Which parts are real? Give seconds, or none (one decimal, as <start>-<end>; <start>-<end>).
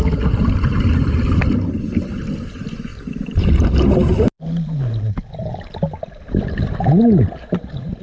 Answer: 0.0-8.0